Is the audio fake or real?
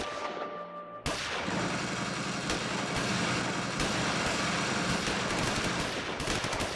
real